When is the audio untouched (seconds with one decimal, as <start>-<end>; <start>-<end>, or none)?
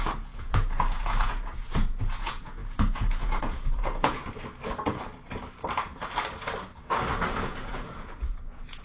4.2-7.3